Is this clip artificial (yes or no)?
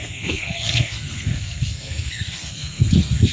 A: yes